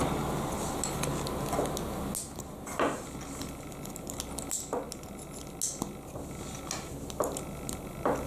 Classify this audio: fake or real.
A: real